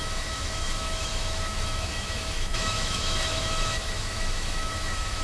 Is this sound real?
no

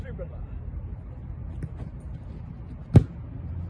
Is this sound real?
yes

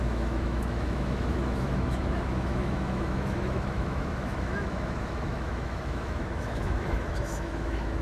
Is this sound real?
no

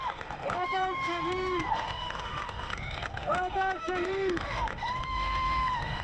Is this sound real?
no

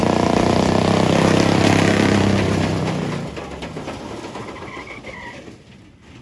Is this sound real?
yes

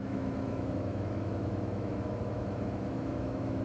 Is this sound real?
no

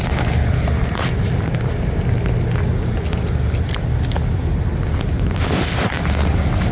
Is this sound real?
yes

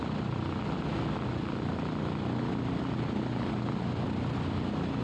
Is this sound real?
yes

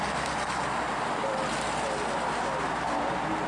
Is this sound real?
yes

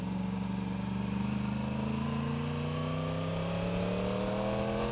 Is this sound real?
yes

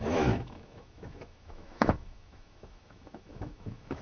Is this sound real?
no